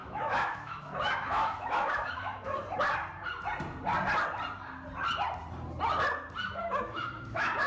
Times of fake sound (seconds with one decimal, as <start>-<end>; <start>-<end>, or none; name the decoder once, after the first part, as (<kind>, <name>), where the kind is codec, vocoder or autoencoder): 0.0-2.6 (autoencoder, DAC-VAE); 6.6-7.7

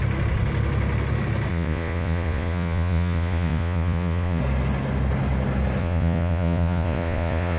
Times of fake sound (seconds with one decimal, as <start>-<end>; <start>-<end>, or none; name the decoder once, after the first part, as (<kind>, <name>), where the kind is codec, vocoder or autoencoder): 1.5-4.4 (vocoder, Vocos); 5.8-7.6

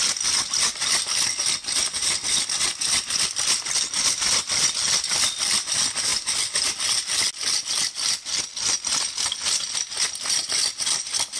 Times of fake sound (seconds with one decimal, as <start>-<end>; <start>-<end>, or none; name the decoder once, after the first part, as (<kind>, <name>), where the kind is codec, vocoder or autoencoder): 6.1-6.7 (vocoder, BigVGAN v2)

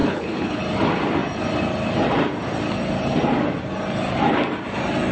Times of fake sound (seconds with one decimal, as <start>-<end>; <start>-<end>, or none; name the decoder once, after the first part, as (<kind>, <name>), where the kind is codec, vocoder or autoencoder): 0.0-0.6 (codec, HILCodec)

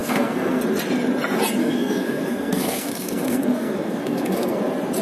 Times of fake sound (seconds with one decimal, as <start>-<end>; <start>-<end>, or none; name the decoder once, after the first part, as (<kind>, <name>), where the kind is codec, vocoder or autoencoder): 0.0-0.6 (codec, SNAC); 1.6-4.6

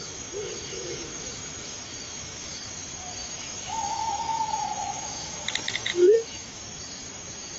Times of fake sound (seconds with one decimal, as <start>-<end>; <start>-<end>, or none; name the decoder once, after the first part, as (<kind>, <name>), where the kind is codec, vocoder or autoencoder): 0.0-2.6 (autoencoder, DAC-VAE); 3.2-6.6

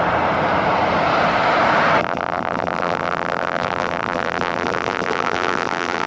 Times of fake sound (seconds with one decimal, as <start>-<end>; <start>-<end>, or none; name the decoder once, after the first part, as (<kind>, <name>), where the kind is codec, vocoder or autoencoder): 2.0-6.1 (vocoder, BigVGAN v2)